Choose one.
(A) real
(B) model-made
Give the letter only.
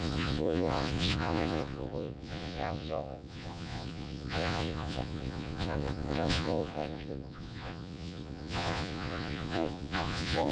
B